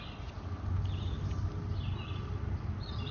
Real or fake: real